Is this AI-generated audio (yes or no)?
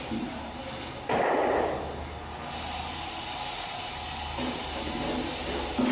no